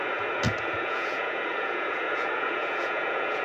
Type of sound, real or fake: fake